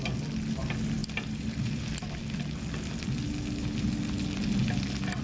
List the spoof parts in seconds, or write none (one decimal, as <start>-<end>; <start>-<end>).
1.0-2.2